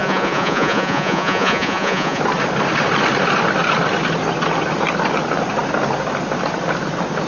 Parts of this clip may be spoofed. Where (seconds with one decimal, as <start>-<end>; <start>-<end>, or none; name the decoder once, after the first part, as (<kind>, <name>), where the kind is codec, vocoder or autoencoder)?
0.0-2.2 (vocoder, Vocos)

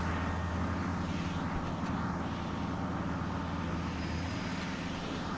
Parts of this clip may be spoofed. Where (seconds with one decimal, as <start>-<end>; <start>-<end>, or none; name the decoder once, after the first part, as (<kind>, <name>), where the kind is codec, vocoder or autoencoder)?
none